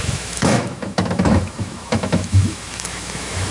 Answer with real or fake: fake